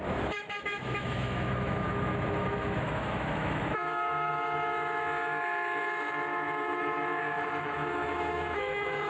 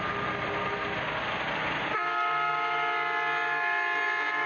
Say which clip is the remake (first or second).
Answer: first